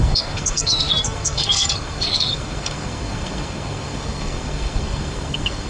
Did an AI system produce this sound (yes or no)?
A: yes